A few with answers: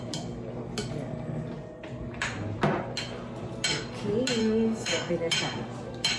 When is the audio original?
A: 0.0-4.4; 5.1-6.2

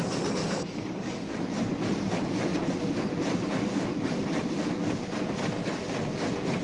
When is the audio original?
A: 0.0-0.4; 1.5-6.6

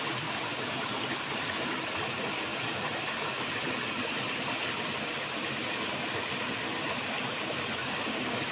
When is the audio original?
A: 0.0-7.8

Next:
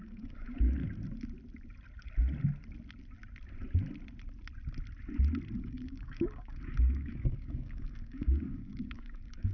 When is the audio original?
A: 0.8-5.6